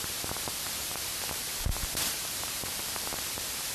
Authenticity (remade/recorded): remade